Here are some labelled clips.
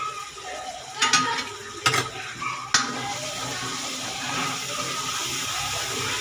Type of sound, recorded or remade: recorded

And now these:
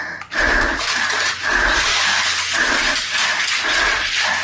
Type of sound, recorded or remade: recorded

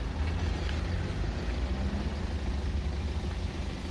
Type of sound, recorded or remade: recorded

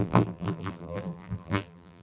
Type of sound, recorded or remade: remade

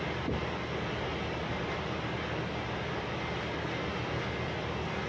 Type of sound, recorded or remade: recorded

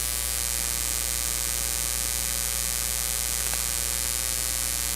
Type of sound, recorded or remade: recorded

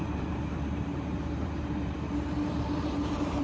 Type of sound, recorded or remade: remade